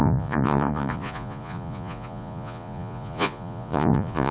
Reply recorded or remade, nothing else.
remade